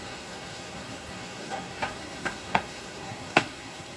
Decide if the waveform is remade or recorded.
remade